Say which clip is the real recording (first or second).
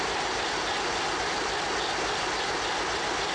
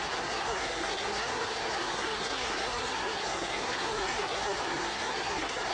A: first